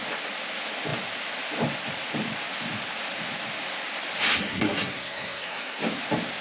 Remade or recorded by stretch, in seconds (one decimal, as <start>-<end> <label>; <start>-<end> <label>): 0.0-4.4 recorded; 4.4-5.8 remade; 5.8-6.4 recorded